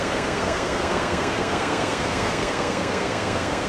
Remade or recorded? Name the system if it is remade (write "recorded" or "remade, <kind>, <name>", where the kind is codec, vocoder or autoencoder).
remade, codec, SNAC